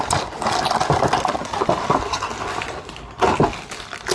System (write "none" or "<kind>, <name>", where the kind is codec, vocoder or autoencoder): none